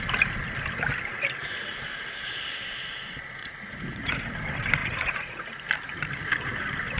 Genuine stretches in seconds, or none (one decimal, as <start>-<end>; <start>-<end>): 0.0-3.4; 4.3-4.8; 5.5-7.0